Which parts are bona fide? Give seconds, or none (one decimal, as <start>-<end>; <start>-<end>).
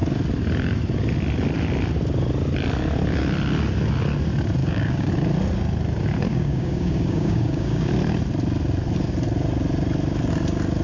0.0-4.6; 5.1-6.3; 7.9-10.8